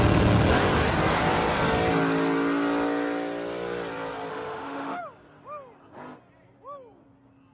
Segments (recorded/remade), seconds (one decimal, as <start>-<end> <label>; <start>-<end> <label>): 0.0-4.3 recorded; 4.3-5.0 remade; 5.0-7.5 recorded